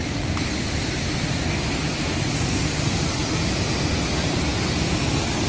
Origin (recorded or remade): recorded